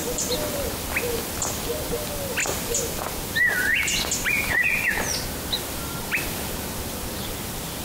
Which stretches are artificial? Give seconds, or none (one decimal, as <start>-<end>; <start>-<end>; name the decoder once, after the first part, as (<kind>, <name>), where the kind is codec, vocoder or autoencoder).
0.0-0.6 (vocoder, BigVGAN v2); 2.4-3.1